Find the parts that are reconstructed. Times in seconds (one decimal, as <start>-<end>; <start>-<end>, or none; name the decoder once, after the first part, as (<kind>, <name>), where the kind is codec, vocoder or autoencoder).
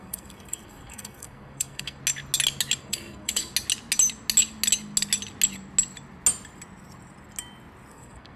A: 0.0-2.0 (codec, SNAC); 2.8-3.5; 7.9-8.4